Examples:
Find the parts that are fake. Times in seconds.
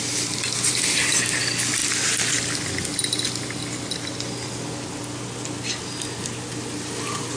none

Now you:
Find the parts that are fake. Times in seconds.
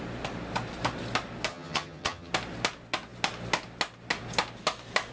1.5-2.3 (vocoder, HiFi-GAN)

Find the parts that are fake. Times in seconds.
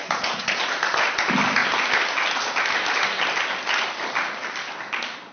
0.0-0.6 (vocoder, Vocos)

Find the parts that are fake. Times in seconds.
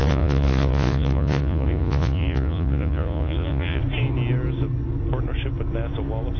0.0-3.8 (vocoder, Vocos)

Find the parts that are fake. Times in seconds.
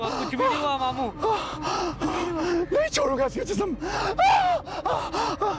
none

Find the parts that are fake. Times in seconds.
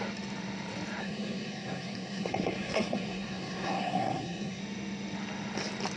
1.0-4.6 (codec, SNAC)